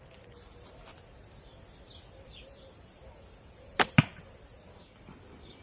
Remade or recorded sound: remade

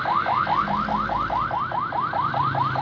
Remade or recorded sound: recorded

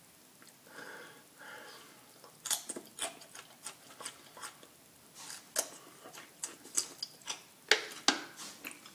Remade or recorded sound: recorded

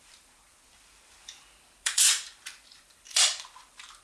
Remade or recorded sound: remade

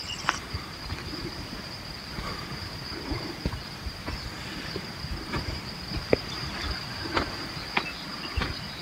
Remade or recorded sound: remade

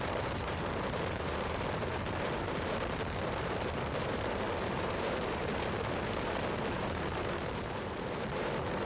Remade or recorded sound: remade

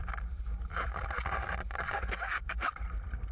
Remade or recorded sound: remade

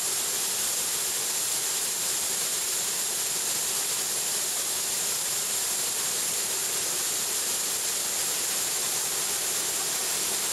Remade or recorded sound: recorded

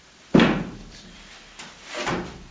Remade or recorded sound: remade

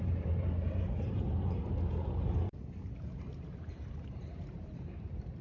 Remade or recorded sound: remade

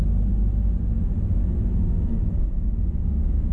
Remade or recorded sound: recorded